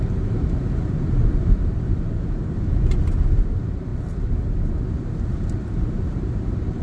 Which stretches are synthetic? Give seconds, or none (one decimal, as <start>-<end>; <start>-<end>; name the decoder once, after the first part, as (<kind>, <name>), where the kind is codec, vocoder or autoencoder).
0.0-3.9 (vocoder, BigVGAN v2); 5.0-6.8